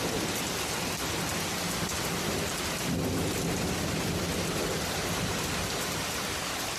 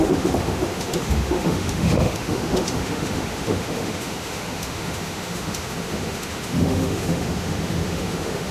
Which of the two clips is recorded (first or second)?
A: first